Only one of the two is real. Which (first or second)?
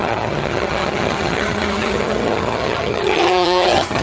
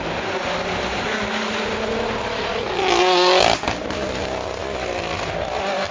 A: second